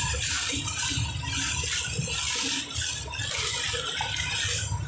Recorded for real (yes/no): yes